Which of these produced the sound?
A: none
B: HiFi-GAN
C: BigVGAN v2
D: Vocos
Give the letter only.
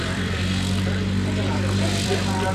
C